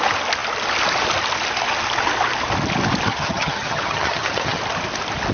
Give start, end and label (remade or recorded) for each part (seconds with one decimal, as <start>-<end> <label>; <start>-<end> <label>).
0.0-3.1 recorded; 3.1-4.6 remade; 4.6-5.3 recorded